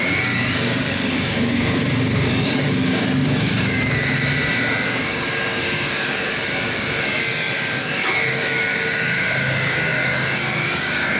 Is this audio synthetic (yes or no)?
yes